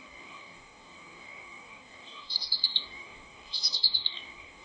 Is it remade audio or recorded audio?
remade